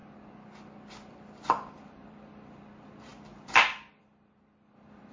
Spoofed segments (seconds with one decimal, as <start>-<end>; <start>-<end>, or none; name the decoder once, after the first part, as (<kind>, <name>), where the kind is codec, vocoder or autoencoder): 1.7-5.1 (vocoder, BigVGAN v2)